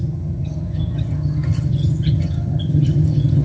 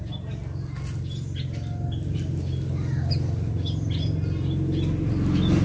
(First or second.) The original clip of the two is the second